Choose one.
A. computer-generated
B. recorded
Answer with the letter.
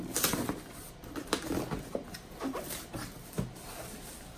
B